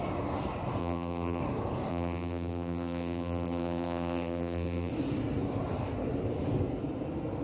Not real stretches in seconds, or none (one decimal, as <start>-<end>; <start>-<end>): 0.8-1.4; 1.9-4.9